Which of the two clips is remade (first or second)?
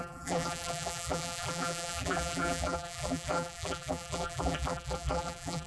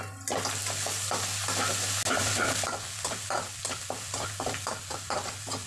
first